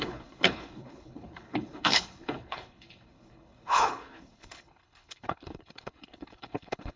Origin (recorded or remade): remade